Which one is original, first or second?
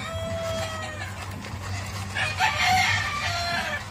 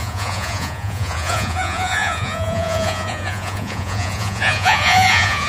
first